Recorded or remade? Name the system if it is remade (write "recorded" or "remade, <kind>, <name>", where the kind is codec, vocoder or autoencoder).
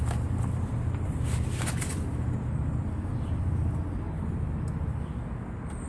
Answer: recorded